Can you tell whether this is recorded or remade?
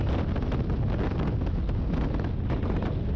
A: recorded